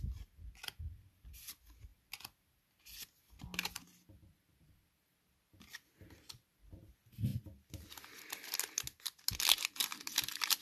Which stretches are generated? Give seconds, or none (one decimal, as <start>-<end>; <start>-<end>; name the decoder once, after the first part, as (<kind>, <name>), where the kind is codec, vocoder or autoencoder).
none